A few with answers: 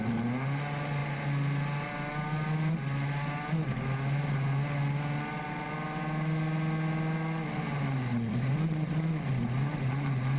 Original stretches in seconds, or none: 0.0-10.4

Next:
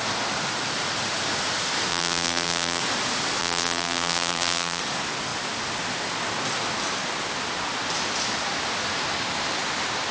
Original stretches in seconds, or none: 0.0-1.9; 2.8-3.4; 4.8-10.1

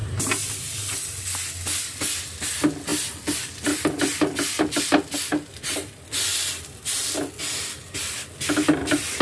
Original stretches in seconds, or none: 0.7-9.2

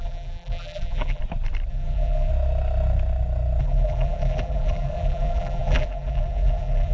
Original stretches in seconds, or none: 1.2-1.7; 2.3-3.6